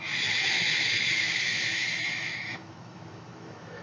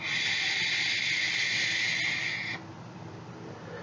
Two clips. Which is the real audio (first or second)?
second